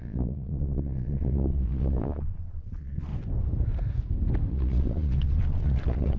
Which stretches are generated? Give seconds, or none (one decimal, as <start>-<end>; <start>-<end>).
0.0-3.1; 4.5-6.2